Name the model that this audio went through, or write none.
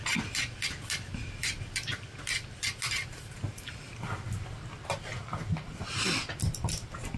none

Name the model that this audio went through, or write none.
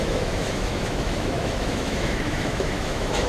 autoencoder, DAC-VAE